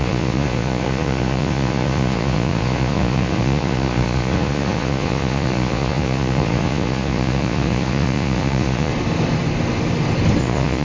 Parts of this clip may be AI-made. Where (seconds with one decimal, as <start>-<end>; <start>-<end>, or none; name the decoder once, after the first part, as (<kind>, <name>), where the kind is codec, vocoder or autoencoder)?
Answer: 0.0-8.9 (vocoder, Vocos); 10.4-10.8